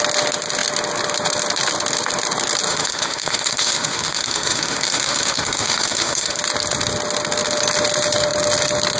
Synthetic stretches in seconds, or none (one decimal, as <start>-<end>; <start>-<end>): 2.7-6.4